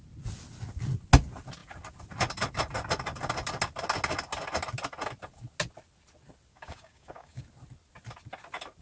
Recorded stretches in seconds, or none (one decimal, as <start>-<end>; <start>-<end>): 0.0-6.5; 7.4-8.8